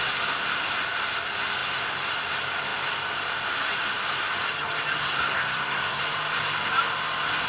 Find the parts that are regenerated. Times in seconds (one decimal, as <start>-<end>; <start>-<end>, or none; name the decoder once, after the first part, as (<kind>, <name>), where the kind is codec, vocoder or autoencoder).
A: 5.0-6.0 (codec, SNAC)